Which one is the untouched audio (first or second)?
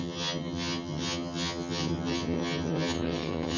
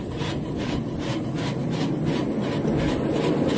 second